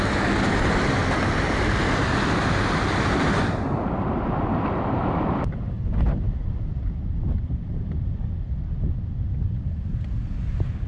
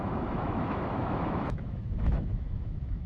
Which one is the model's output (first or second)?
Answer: second